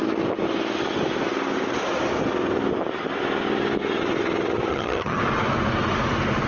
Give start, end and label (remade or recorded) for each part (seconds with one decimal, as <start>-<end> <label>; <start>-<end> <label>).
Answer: 0.0-4.7 recorded; 4.7-5.2 remade; 5.2-6.5 recorded